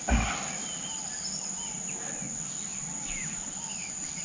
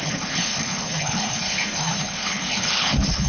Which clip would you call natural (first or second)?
first